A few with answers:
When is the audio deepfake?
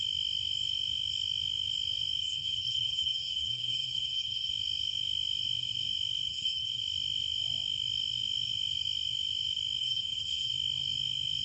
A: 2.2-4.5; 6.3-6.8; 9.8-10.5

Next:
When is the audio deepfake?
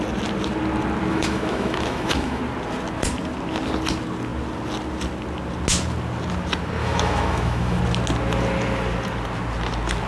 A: 1.1-2.4; 6.8-7.8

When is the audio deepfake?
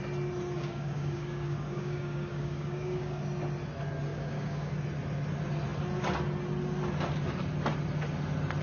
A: 0.6-3.2; 4.1-4.7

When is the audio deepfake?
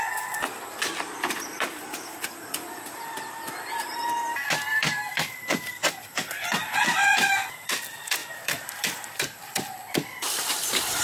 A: 0.0-5.8; 6.5-11.0